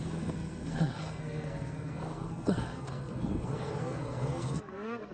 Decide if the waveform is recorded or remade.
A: remade